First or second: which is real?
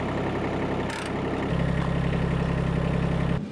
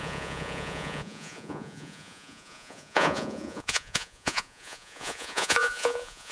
first